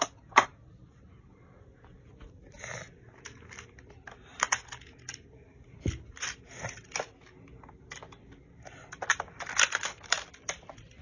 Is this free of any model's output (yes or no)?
yes